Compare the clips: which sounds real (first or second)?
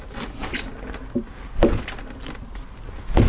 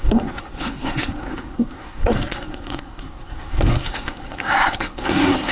first